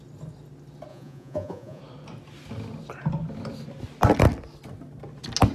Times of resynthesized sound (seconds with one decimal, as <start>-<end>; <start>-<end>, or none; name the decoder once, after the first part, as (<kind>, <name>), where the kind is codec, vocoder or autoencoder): 0.9-1.8 (vocoder, Vocos)

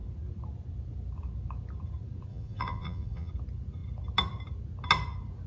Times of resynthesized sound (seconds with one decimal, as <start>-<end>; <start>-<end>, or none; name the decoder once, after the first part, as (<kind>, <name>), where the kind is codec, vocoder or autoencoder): 2.3-3.3 (vocoder, Vocos)